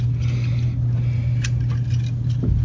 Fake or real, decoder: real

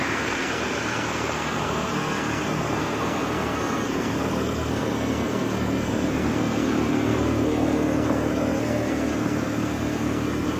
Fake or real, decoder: fake, codec, SNAC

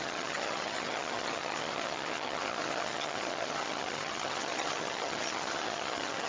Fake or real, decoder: fake, vocoder, HiFi-GAN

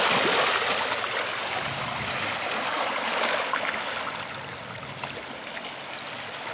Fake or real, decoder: real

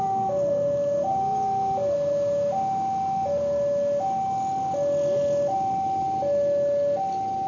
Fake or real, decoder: real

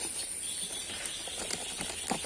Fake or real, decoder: fake, vocoder, BigVGAN v2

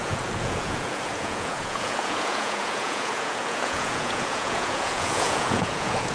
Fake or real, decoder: fake, vocoder, Vocos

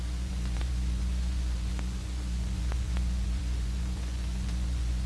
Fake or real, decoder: fake, vocoder, Vocos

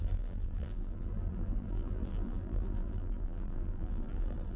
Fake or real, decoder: fake, vocoder, BigVGAN v2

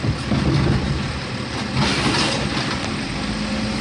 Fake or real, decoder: real